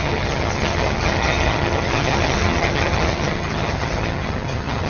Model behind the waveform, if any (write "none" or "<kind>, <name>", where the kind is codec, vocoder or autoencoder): vocoder, HiFi-GAN